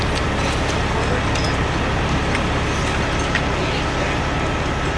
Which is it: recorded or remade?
recorded